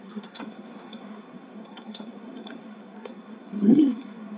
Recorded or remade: remade